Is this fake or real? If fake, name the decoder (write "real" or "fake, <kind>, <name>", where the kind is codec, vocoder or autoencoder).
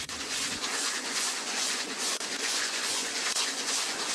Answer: fake, vocoder, Vocos